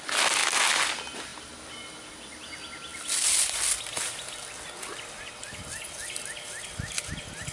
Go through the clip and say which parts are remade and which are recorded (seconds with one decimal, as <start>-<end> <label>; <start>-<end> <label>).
0.0-7.5 recorded